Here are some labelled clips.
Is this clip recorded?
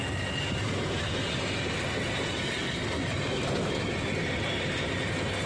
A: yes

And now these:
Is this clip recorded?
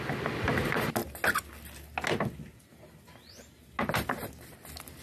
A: yes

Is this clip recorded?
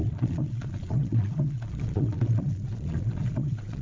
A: no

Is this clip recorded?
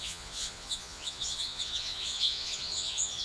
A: no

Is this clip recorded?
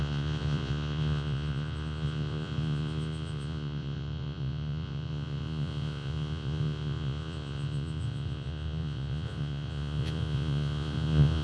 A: no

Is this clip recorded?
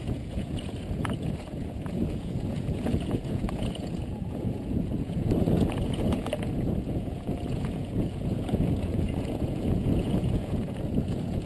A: no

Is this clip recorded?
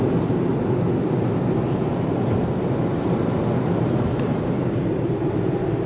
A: yes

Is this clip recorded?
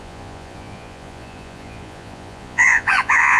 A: no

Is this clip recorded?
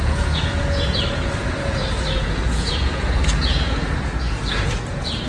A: no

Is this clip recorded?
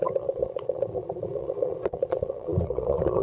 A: no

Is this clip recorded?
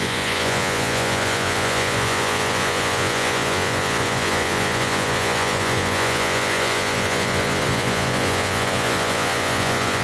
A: no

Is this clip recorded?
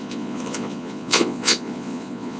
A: no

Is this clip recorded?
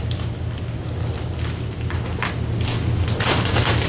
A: yes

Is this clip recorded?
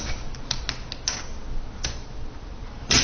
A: yes